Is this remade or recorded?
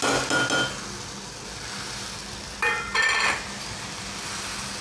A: recorded